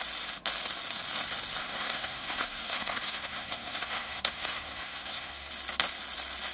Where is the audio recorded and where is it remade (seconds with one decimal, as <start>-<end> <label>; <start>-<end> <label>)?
0.0-1.6 recorded; 1.6-5.5 remade; 5.5-6.5 recorded